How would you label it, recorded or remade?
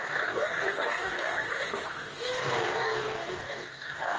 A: remade